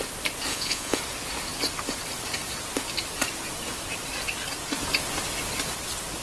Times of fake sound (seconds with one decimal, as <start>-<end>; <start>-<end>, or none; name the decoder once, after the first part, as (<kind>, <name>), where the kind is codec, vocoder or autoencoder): 0.5-1.0 (vocoder, Vocos)